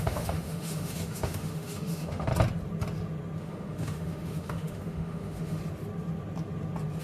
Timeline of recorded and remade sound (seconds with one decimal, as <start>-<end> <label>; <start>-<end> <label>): 0.0-2.3 remade; 2.3-3.4 recorded; 3.4-5.6 remade; 5.6-7.0 recorded